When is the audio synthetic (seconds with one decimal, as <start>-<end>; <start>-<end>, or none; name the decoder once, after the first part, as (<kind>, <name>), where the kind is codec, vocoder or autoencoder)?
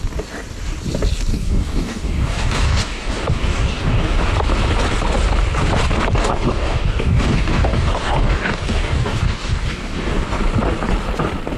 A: 1.3-4.2 (codec, DAC); 6.2-10.4